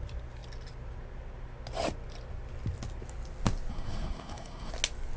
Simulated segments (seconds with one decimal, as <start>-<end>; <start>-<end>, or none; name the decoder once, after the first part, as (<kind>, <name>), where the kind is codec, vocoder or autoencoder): 3.7-4.7 (codec, SNAC)

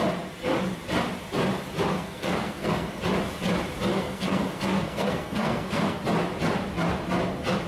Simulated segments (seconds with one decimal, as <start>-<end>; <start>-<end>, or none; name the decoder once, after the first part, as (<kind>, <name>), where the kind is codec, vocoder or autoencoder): 1.9-3.0 (codec, SNAC); 3.9-6.0